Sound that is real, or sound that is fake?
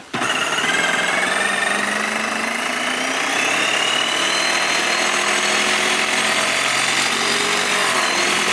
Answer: real